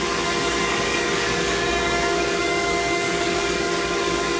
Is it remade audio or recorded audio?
remade